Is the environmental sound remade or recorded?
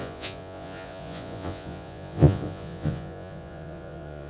remade